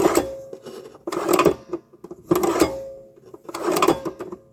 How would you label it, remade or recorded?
recorded